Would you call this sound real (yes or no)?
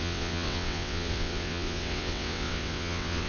no